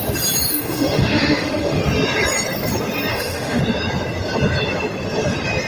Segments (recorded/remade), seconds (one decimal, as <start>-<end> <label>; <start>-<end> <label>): 0.0-0.5 recorded; 0.5-1.8 remade; 1.8-3.1 recorded; 3.1-3.6 remade; 3.6-5.7 recorded